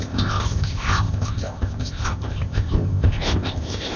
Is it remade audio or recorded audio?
remade